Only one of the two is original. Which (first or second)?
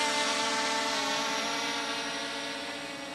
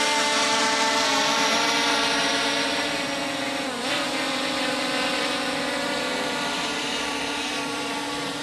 first